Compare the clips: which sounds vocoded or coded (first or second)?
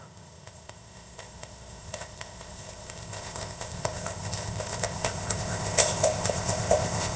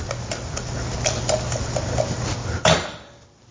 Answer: first